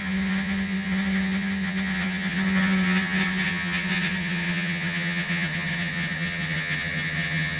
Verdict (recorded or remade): remade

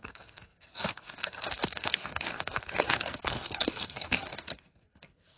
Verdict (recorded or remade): remade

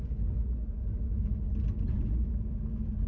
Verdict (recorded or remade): recorded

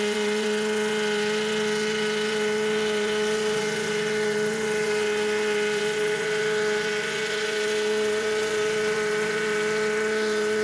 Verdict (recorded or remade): remade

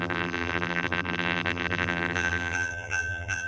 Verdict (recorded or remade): remade